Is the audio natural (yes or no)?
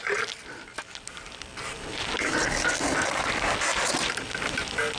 yes